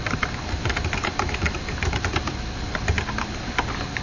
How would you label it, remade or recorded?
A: recorded